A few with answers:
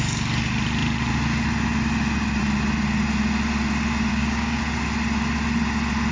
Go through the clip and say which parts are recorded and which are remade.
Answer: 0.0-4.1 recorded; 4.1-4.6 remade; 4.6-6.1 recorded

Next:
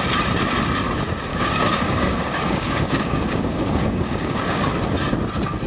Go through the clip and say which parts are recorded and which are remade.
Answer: 0.0-1.3 recorded; 1.3-4.6 remade; 4.6-5.7 recorded